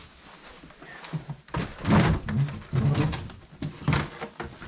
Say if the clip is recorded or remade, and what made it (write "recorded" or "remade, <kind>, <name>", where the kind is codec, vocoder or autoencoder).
recorded